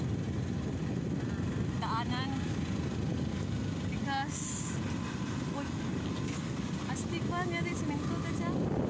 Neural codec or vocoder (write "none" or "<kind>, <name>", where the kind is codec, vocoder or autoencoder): none